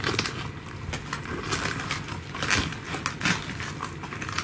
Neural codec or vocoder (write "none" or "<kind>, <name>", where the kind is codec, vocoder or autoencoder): none